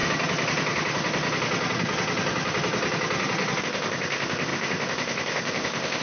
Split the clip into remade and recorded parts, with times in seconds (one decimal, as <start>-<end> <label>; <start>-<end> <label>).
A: 0.0-3.6 recorded; 3.6-6.0 remade